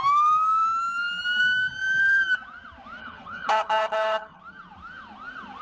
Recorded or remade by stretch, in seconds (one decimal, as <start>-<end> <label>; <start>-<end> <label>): 0.0-3.0 recorded; 3.0-4.4 remade; 4.4-5.6 recorded

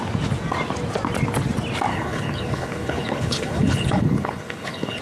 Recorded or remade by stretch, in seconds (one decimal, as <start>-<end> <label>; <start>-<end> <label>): 0.0-1.9 recorded; 1.9-5.0 remade

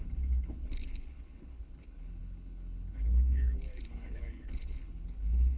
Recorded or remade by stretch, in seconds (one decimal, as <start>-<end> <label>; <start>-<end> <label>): 0.0-5.6 remade

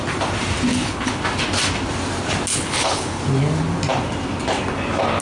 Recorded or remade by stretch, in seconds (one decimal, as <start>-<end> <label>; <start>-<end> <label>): 0.0-0.7 recorded; 0.7-1.2 remade; 1.2-2.5 recorded; 2.5-3.2 remade; 3.2-5.2 recorded